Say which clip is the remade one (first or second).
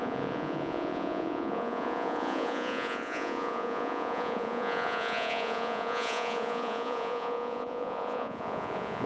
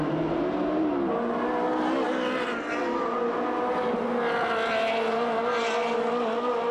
first